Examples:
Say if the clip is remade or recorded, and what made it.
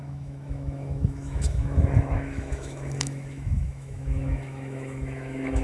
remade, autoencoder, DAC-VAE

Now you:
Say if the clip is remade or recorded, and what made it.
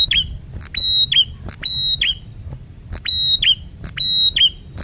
recorded